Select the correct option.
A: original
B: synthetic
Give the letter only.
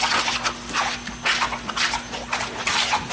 A